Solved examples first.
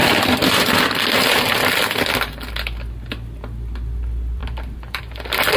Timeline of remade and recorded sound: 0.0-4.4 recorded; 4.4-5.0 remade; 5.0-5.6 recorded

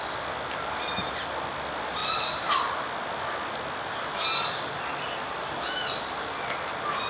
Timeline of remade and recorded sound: 0.0-7.1 recorded

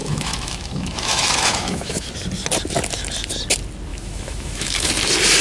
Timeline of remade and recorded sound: 0.0-2.1 remade; 2.1-3.9 recorded; 3.9-4.9 remade; 4.9-5.4 recorded

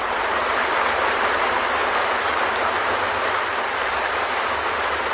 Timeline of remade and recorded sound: 0.0-5.1 remade

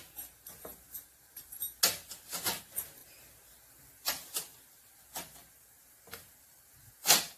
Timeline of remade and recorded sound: 0.0-7.4 recorded

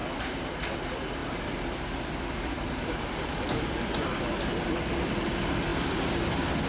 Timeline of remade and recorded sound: 0.0-6.7 recorded

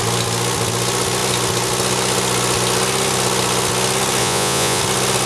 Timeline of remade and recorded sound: 0.0-4.2 recorded; 4.2-4.8 remade; 4.8-5.3 recorded